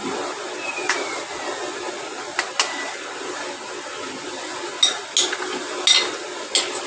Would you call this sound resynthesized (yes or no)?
no